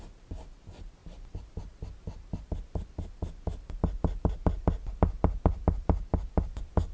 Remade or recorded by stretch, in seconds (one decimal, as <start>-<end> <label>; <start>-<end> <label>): 0.0-6.9 recorded